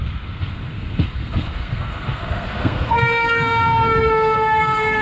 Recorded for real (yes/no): no